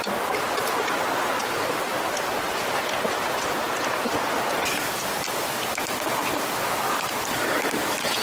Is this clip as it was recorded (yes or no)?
yes